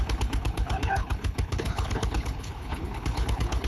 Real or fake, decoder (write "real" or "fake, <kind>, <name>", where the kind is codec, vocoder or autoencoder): fake, codec, HILCodec